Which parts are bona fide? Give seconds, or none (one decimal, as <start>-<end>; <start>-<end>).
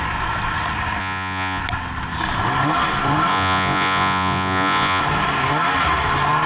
0.0-1.0; 1.6-3.3; 5.0-6.5